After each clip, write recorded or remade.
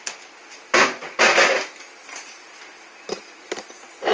recorded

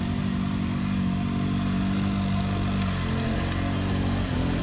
recorded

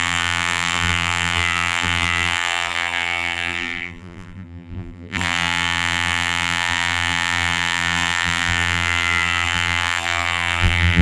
remade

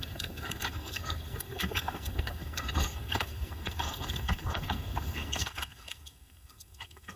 remade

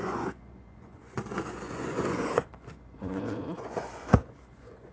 remade